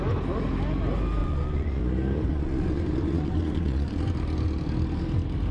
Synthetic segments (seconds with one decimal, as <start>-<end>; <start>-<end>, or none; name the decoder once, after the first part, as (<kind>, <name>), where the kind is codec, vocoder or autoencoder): 1.2-1.8 (vocoder, Vocos); 2.3-4.0